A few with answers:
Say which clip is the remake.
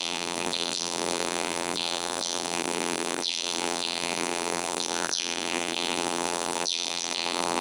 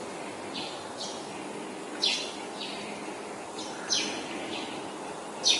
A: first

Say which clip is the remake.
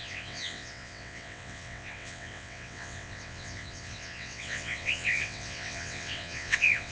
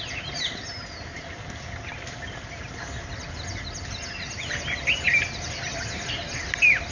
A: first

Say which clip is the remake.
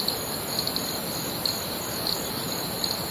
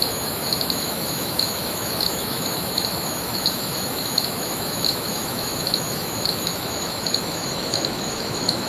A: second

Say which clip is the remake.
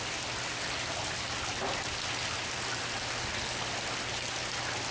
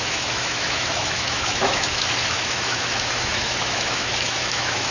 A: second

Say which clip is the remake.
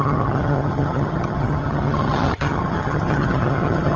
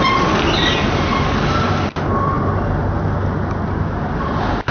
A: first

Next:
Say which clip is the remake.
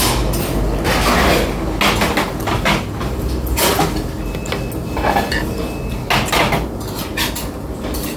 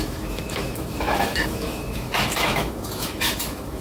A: second